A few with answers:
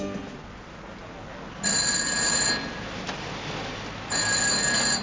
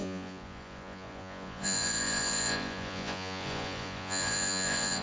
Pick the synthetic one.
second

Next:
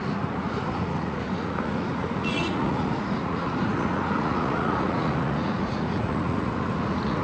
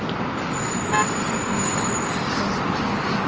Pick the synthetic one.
first